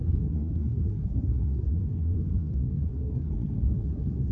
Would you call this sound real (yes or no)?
no